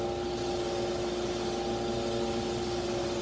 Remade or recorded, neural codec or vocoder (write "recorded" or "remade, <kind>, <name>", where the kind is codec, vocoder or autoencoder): recorded